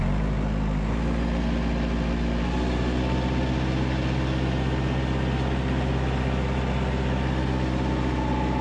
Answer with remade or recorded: recorded